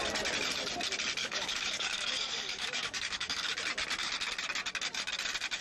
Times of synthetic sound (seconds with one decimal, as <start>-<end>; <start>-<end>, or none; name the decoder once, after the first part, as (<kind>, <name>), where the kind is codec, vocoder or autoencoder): 1.2-3.5 (codec, DAC)